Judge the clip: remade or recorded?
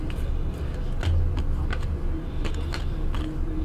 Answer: recorded